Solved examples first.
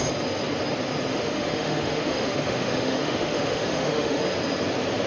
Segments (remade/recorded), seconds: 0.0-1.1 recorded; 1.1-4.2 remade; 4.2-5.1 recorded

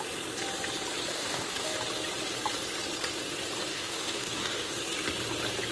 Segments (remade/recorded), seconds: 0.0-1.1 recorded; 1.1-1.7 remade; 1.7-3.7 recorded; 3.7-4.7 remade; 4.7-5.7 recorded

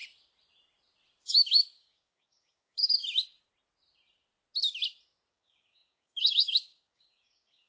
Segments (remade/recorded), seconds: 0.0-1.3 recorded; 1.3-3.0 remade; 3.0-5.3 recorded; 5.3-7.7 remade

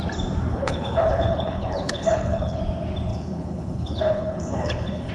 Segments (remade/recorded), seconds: 0.0-0.5 recorded; 0.5-2.6 remade; 2.6-3.1 recorded; 3.1-5.1 remade

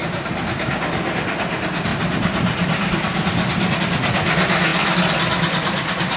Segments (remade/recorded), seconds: 0.0-0.8 remade; 0.8-1.9 recorded; 1.9-3.8 remade; 3.8-6.2 recorded